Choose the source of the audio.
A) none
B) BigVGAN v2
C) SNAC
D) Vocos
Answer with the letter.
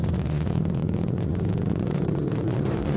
D